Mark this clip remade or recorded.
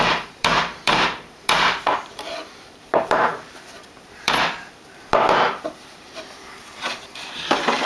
remade